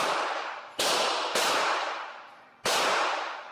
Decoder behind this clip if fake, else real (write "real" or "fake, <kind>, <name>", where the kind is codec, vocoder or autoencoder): fake, vocoder, BigVGAN v2